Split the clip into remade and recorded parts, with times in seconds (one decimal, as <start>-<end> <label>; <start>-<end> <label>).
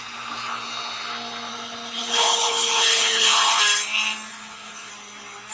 0.0-1.5 recorded; 1.5-3.6 remade; 3.6-4.3 recorded; 4.3-4.9 remade; 4.9-5.5 recorded